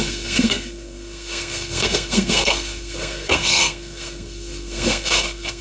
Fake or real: fake